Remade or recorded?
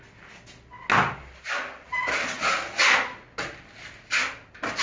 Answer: recorded